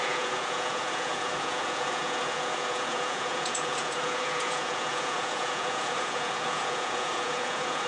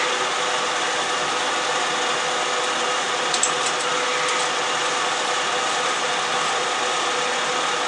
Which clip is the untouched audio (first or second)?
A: second